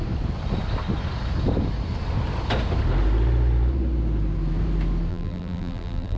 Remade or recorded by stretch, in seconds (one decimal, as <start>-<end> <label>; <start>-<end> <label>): 0.0-5.1 recorded; 5.1-6.2 remade